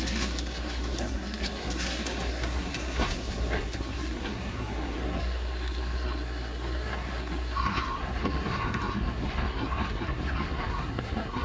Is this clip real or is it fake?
fake